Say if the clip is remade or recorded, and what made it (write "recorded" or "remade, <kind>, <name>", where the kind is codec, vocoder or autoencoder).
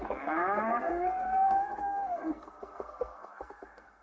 remade, codec, SNAC